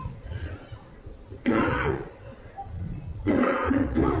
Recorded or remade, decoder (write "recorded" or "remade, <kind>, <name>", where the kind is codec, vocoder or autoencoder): remade, vocoder, Vocos